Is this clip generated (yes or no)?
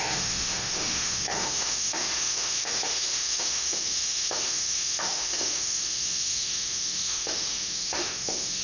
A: yes